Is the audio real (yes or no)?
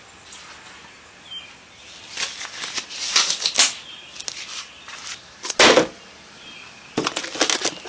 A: yes